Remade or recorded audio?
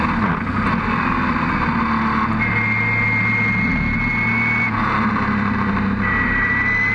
recorded